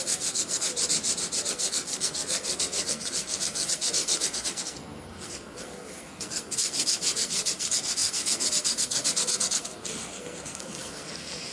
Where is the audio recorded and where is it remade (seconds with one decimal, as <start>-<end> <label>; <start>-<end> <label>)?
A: 0.0-0.7 remade; 0.7-1.5 recorded; 1.5-11.5 remade